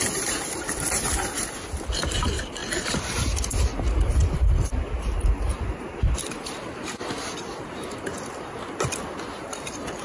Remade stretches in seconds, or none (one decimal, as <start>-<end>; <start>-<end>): 0.0-2.6; 6.2-8.1; 9.4-10.0